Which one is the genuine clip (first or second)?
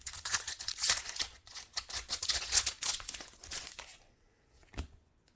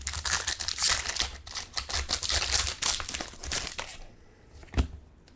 second